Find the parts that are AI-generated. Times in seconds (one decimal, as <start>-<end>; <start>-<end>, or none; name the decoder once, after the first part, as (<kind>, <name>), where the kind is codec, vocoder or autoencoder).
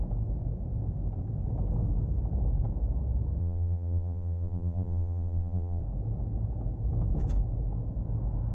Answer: 3.4-5.8 (vocoder, BigVGAN v2)